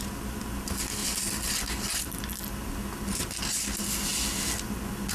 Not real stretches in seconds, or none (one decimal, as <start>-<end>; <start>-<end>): none